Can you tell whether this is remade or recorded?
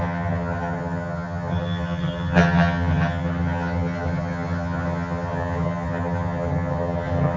remade